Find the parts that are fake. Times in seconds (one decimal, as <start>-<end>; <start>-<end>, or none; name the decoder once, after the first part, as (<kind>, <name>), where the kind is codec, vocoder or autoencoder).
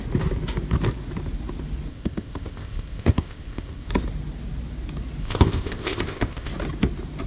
1.9-3.9 (codec, ZipCodec); 5.2-6.5